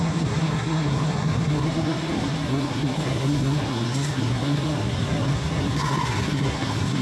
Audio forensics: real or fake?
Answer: fake